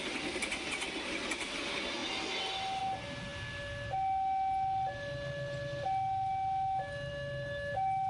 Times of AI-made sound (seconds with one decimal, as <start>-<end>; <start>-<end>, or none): none